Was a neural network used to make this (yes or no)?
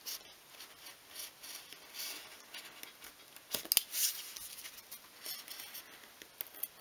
no